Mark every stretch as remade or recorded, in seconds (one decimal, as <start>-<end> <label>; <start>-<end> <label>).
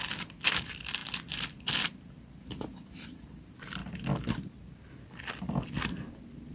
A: 0.0-6.5 recorded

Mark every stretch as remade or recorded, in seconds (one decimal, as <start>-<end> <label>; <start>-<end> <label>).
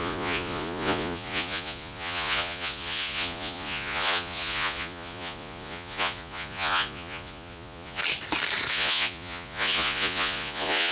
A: 0.0-8.0 remade; 8.0-8.7 recorded; 8.7-10.9 remade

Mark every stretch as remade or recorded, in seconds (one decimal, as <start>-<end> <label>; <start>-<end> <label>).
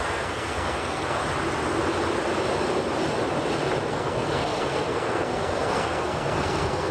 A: 0.0-1.2 remade; 1.2-3.9 recorded; 3.9-6.9 remade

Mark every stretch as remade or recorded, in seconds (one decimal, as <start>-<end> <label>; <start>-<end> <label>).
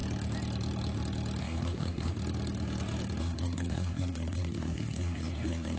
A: 0.0-1.4 recorded; 1.4-2.1 remade; 2.1-3.2 recorded; 3.2-5.8 remade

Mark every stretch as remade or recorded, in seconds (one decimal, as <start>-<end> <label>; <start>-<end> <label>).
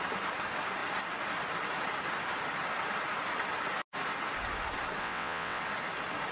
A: 0.0-5.0 recorded; 5.0-5.6 remade; 5.6-6.3 recorded